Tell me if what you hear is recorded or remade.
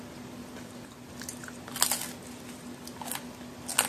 recorded